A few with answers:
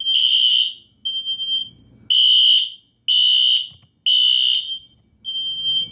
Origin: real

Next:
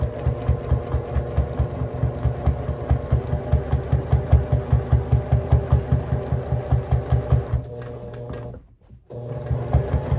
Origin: real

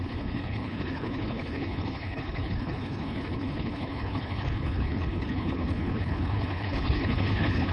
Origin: fake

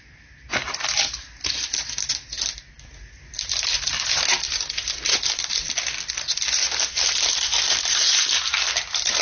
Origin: real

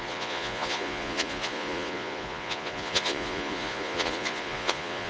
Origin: fake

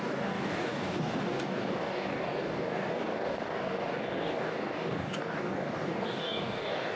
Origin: fake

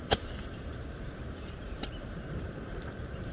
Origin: fake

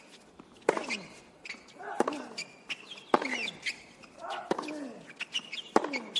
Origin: real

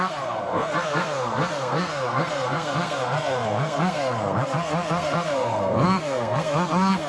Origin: fake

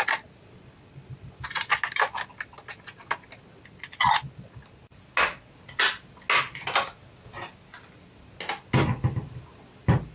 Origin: real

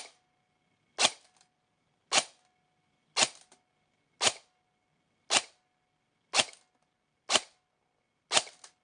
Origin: real